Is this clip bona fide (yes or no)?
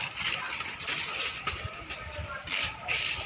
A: yes